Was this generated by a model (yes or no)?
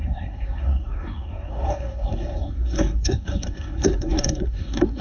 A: yes